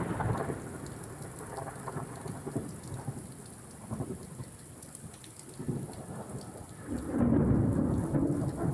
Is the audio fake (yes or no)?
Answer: no